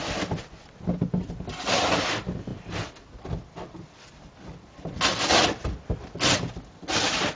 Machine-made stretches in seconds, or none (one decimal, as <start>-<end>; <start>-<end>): none